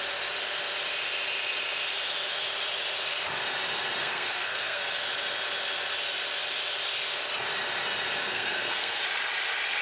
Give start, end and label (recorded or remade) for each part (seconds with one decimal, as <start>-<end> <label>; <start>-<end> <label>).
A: 0.0-4.0 recorded; 4.0-4.8 remade; 4.8-8.3 recorded; 8.3-9.0 remade; 9.0-9.8 recorded